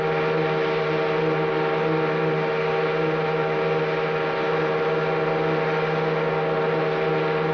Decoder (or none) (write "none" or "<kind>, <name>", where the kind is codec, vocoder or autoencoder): none